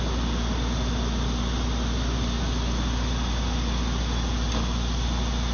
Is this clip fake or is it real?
real